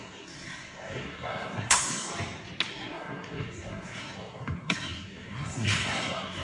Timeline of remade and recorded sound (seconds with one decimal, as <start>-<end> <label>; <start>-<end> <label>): 0.0-2.1 remade; 2.1-2.7 recorded; 2.7-6.4 remade